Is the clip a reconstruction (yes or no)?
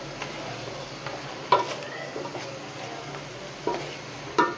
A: no